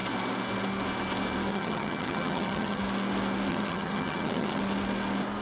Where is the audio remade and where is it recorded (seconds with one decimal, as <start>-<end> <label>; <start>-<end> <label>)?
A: 0.0-1.5 recorded; 1.5-2.8 remade; 2.8-3.5 recorded; 3.5-4.6 remade; 4.6-5.4 recorded